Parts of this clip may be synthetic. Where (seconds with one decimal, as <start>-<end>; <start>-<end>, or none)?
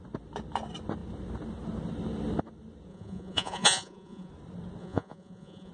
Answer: 2.9-4.3; 4.8-5.7